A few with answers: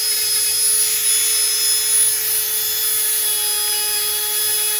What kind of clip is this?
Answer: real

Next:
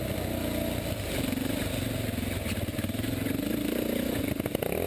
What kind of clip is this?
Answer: real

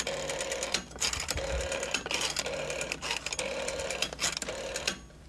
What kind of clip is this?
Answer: real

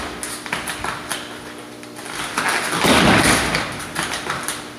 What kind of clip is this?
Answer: real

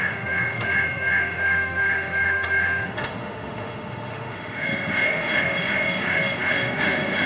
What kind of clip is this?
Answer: fake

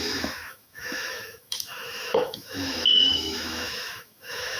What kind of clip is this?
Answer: fake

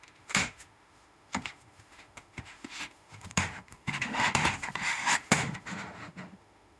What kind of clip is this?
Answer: fake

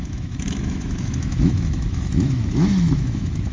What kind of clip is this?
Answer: fake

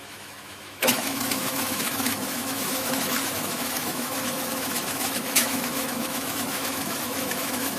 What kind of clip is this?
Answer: fake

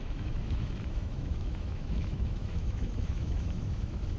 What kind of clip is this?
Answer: fake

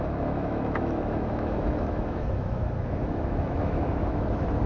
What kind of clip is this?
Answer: fake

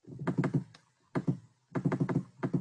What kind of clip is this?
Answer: real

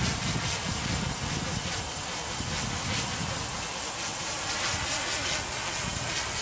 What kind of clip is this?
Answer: real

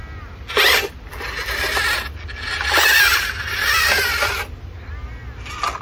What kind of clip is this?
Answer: real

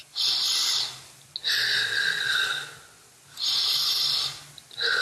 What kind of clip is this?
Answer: real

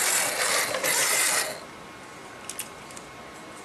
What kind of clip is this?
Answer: real